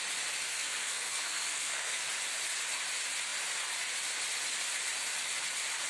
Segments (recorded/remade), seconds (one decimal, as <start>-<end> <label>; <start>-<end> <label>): 0.0-0.5 recorded; 0.5-2.0 remade; 2.0-5.9 recorded